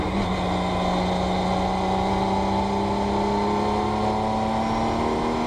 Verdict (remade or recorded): recorded